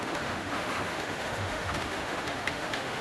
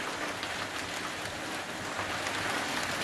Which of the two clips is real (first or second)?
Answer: second